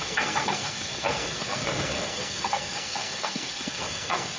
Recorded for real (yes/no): no